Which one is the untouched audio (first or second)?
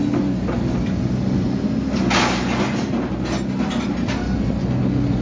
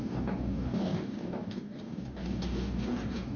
first